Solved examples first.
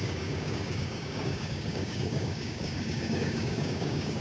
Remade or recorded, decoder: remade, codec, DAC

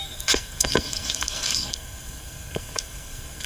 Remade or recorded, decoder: remade, codec, SNAC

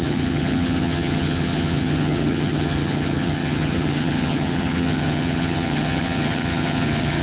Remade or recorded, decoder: remade, vocoder, HiFi-GAN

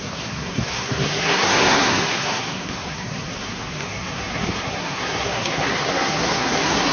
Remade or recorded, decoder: remade, codec, SNAC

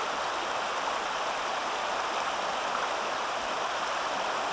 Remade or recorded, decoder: recorded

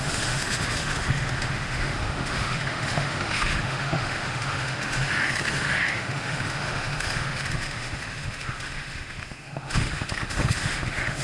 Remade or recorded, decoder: remade, autoencoder, DAC-VAE